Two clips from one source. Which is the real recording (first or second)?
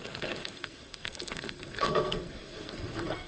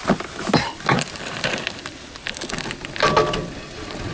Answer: second